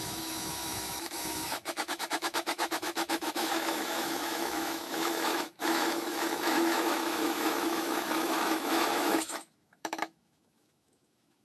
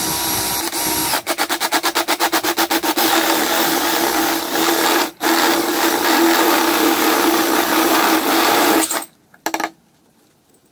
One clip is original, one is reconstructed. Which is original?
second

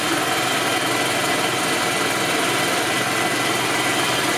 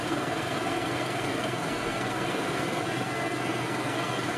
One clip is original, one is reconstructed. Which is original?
first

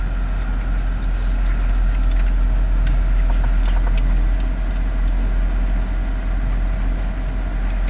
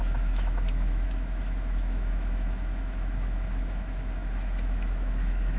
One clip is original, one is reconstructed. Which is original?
first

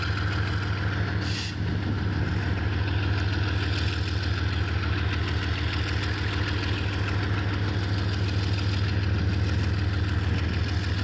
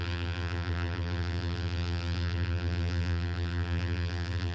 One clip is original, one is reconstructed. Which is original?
first